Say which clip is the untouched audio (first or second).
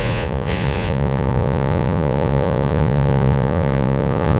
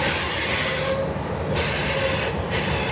second